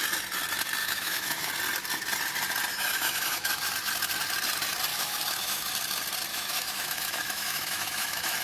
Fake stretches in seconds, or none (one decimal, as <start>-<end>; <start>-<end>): 0.8-1.5; 2.7-3.6; 4.9-5.7; 6.3-8.4